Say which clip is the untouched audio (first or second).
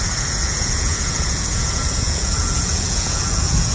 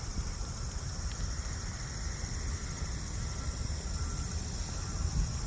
second